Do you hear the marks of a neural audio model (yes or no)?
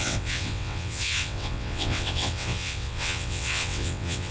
yes